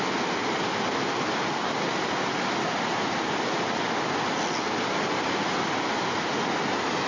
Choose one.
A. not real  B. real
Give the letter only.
B